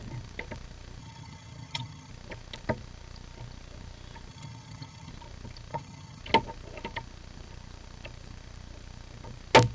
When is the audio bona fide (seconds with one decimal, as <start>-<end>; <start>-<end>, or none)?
0.0-1.0; 2.1-4.3; 5.1-5.7; 6.2-9.7

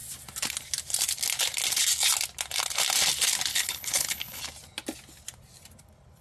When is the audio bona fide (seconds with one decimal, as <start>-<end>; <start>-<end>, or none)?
0.0-3.5; 4.4-6.2